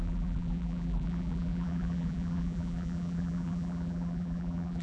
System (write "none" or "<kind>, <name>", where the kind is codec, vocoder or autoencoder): vocoder, BigVGAN v2